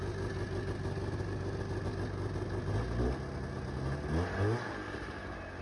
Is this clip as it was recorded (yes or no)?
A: yes